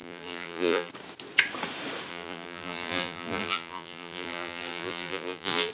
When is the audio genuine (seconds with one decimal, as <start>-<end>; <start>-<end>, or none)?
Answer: 0.9-2.1